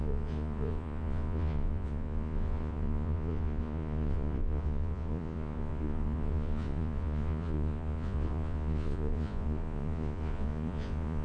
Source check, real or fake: fake